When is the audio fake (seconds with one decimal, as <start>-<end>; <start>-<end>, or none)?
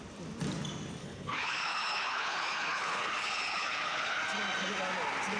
1.0-4.2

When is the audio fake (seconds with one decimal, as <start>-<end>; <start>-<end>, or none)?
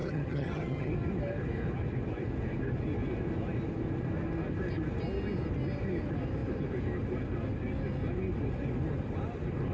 0.0-0.9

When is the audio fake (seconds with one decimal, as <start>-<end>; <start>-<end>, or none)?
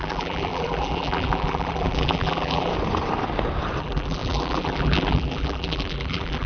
0.0-2.7; 3.8-6.5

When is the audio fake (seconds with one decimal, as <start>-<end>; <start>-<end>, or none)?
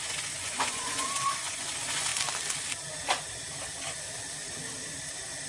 0.0-2.1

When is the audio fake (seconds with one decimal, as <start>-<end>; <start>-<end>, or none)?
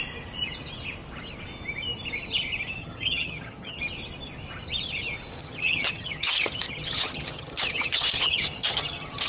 2.8-3.8; 5.4-9.3